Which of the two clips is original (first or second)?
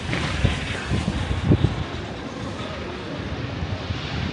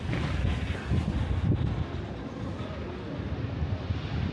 second